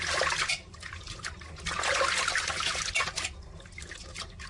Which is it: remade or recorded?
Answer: recorded